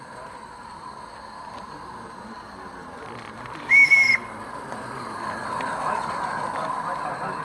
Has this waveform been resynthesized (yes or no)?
no